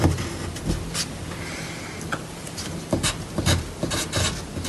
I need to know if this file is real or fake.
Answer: real